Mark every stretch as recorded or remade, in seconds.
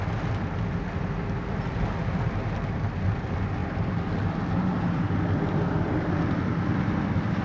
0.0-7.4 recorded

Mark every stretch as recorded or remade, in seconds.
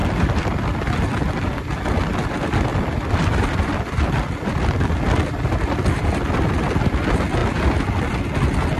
0.0-0.9 remade; 0.9-2.7 recorded; 2.7-6.5 remade; 6.5-7.4 recorded; 7.4-8.0 remade; 8.0-8.8 recorded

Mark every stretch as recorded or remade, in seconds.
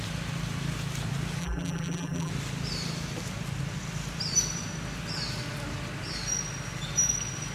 0.0-1.4 recorded; 1.4-2.3 remade; 2.3-7.5 recorded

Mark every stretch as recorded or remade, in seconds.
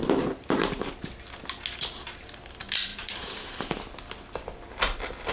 0.0-1.3 remade; 1.3-2.9 recorded; 2.9-3.9 remade; 3.9-5.3 recorded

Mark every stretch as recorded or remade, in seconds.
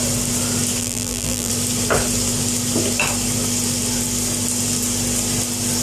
0.0-0.8 recorded; 0.8-1.5 remade; 1.5-5.8 recorded